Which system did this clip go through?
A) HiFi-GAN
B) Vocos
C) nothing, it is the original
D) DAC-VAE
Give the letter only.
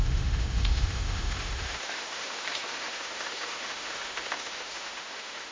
D